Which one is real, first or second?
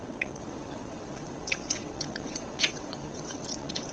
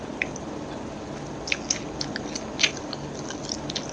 second